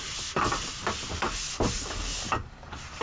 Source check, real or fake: real